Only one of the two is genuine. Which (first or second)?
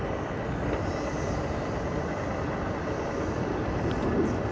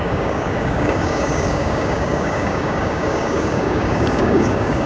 first